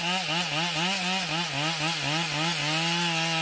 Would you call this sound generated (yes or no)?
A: no